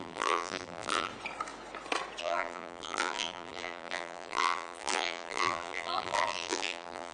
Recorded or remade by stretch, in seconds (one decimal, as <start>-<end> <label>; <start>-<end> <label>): 0.0-1.1 remade; 1.1-2.2 recorded; 2.2-7.1 remade